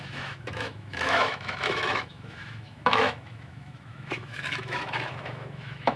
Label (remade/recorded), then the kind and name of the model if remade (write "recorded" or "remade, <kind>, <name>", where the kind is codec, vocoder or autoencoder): remade, autoencoder, DAC-VAE